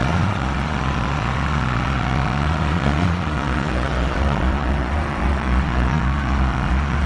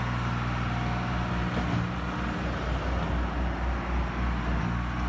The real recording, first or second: second